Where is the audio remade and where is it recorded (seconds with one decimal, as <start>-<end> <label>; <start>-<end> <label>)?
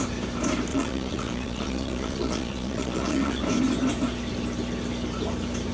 0.0-0.7 recorded; 0.7-3.4 remade; 3.4-5.7 recorded